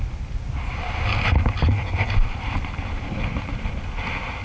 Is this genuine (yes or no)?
yes